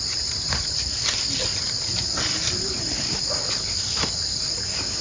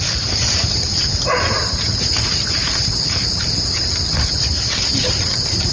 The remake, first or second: second